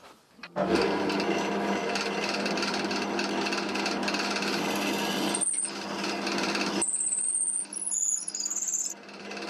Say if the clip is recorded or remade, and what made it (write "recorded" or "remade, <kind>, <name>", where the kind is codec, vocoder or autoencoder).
recorded